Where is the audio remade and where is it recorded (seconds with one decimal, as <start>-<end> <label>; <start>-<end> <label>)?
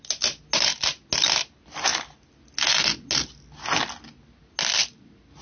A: 0.0-5.4 recorded